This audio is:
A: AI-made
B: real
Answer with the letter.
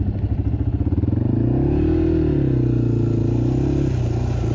B